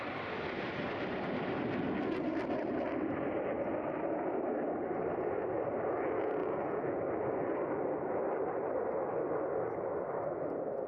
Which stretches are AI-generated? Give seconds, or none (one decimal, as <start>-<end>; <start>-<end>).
6.4-7.0